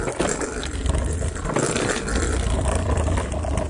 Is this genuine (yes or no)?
yes